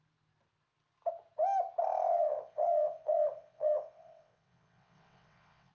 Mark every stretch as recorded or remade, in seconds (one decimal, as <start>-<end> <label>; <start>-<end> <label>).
0.0-2.1 recorded; 2.1-5.7 remade